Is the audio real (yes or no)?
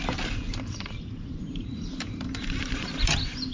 no